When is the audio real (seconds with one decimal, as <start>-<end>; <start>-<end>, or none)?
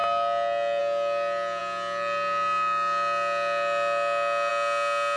0.0-5.2